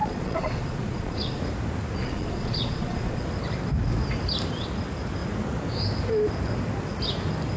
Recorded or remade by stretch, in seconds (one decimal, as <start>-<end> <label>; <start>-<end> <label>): 0.0-1.4 remade; 1.4-2.0 recorded; 2.0-3.2 remade; 3.2-7.6 recorded

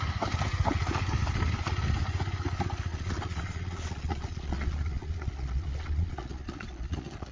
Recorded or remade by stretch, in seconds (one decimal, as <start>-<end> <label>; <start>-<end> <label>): 0.0-2.9 recorded; 2.9-7.3 remade